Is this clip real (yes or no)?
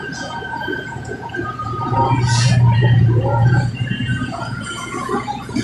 no